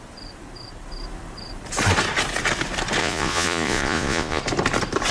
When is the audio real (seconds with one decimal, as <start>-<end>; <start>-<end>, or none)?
0.0-3.0; 4.4-5.1